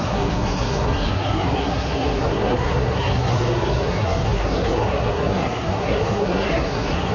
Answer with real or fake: fake